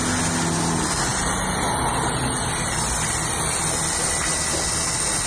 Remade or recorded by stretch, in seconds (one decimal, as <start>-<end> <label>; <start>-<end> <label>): 0.0-5.3 recorded